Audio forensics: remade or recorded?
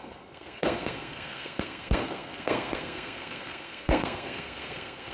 remade